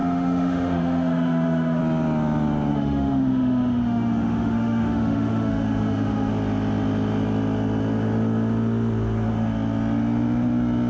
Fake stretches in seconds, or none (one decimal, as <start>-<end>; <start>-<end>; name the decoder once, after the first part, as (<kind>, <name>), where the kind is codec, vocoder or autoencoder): 0.0-1.8 (autoencoder, DAC-VAE); 2.7-6.3